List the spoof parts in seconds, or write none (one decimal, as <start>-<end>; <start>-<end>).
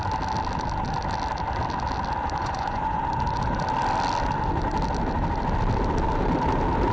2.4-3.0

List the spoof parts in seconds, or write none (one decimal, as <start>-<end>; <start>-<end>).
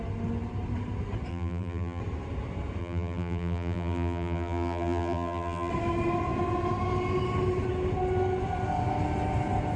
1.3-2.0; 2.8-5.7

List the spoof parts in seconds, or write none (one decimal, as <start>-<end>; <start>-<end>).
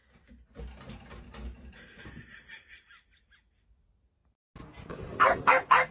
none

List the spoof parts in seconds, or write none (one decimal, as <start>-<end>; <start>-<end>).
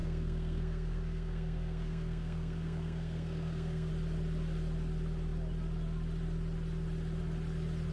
0.0-3.9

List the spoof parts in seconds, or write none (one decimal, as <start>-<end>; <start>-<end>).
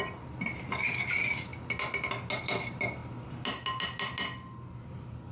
0.0-1.5; 2.4-3.0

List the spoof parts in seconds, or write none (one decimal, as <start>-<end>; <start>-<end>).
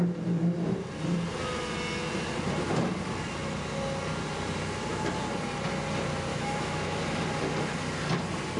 6.3-7.0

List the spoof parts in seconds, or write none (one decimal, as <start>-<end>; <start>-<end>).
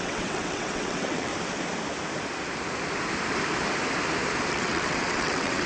0.0-1.3; 4.5-5.7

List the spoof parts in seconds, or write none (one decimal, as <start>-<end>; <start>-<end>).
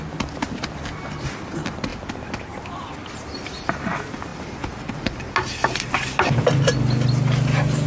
none